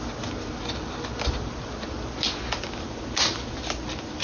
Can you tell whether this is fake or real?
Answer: real